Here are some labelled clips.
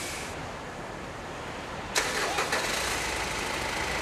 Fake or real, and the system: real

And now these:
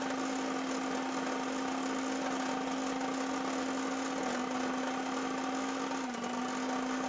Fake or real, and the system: real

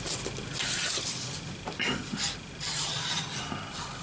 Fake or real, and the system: real